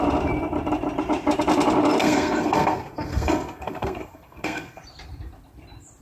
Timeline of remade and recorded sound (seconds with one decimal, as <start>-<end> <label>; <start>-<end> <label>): 0.0-2.0 recorded; 2.0-4.8 remade; 4.8-6.0 recorded